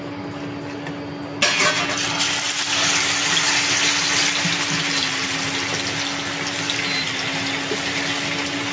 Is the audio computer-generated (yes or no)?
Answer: no